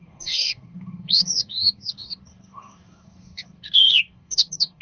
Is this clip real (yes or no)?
no